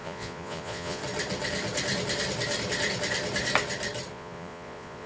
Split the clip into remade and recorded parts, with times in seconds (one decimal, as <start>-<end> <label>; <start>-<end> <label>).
0.0-1.0 remade; 1.0-4.1 recorded; 4.1-5.1 remade